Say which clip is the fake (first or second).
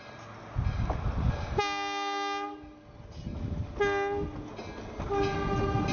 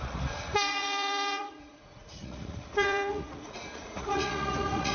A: second